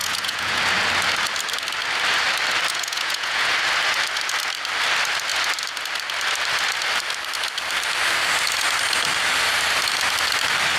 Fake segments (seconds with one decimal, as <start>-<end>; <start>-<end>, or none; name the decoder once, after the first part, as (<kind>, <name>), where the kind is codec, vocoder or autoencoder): 0.0-0.6 (vocoder, Vocos); 2.7-3.5